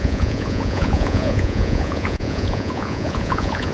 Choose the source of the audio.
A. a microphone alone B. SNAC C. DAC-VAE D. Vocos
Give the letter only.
D